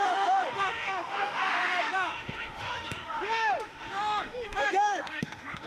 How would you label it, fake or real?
fake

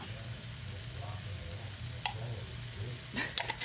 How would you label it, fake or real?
real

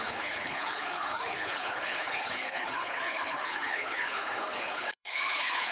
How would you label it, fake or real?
fake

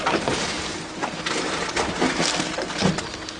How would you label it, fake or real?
real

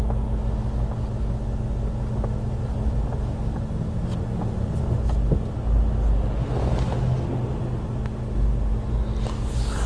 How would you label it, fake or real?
real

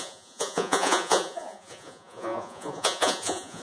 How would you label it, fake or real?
fake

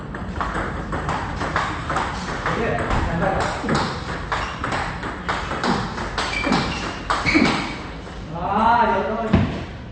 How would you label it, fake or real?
fake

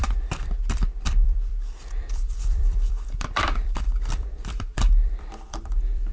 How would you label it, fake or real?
fake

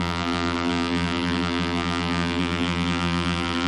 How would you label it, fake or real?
fake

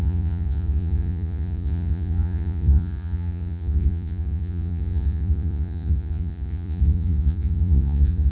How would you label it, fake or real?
fake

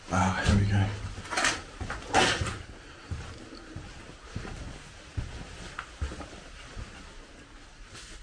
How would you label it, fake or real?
real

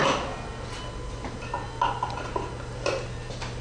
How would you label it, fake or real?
real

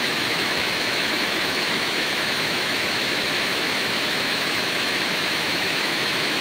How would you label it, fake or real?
fake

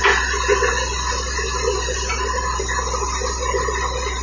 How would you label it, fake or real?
real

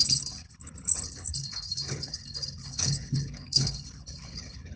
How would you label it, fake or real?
fake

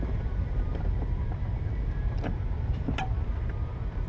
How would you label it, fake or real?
fake